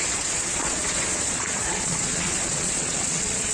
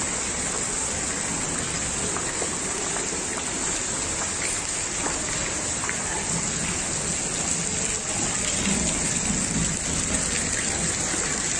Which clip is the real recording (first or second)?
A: second